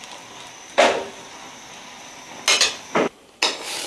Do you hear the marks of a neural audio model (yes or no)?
no